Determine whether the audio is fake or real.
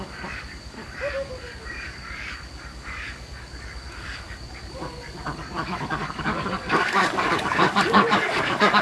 fake